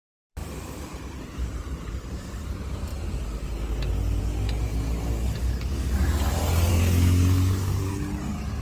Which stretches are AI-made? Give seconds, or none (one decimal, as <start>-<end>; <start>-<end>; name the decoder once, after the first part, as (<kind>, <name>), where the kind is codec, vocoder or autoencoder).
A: 5.4-6.2 (codec, DAC); 6.7-7.9